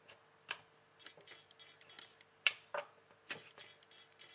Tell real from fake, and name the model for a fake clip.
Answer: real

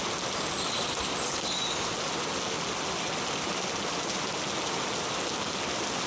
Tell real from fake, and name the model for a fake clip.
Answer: real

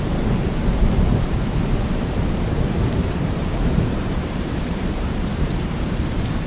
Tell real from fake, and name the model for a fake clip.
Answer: fake, vocoder, BigVGAN v2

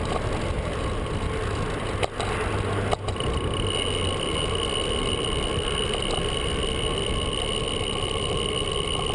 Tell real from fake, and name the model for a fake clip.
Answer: real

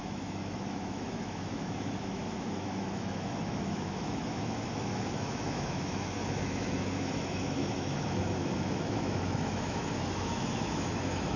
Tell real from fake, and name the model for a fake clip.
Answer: fake, autoencoder, DAC-VAE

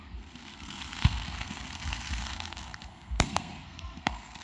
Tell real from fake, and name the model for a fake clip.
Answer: fake, codec, SNAC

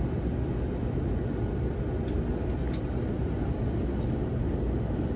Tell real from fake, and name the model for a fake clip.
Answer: real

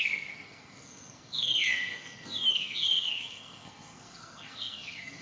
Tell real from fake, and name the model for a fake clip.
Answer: fake, codec, SNAC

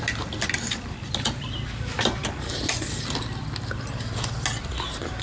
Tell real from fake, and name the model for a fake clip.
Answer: real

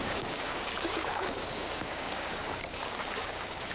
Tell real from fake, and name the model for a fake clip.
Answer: fake, codec, DAC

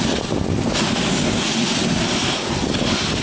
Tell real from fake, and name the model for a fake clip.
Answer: real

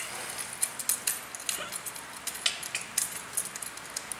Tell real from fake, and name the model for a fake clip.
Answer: real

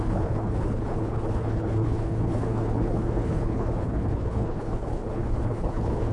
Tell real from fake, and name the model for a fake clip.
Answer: fake, codec, HILCodec